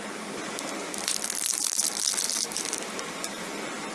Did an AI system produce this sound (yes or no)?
yes